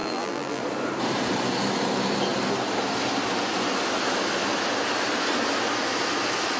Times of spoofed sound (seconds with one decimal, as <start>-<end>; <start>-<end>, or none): 0.0-0.6